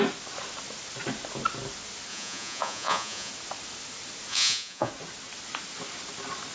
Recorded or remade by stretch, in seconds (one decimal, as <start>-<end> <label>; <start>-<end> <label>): 0.0-2.1 recorded; 2.1-3.3 remade; 3.3-4.3 recorded; 4.3-4.9 remade; 4.9-6.5 recorded